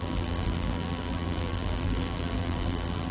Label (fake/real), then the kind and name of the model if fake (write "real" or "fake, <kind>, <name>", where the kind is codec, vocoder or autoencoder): fake, vocoder, BigVGAN v2